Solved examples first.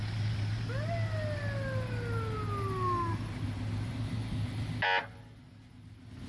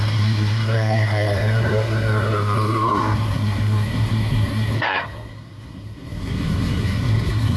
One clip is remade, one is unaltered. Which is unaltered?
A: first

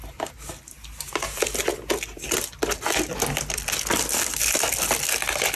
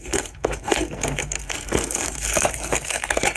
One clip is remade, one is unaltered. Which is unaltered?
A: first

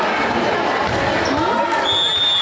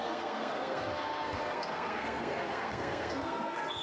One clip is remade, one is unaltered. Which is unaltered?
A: first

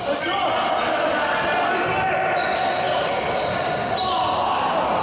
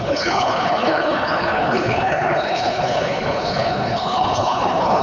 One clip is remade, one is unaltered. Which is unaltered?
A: first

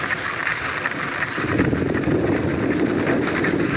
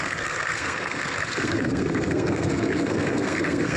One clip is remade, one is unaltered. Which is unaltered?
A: first